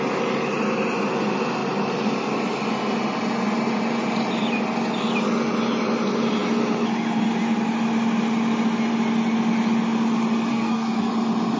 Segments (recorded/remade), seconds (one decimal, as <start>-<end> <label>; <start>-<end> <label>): 0.0-10.5 recorded; 10.5-11.1 remade; 11.1-11.6 recorded